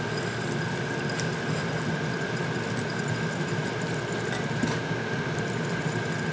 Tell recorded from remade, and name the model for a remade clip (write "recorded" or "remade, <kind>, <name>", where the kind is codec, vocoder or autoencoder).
recorded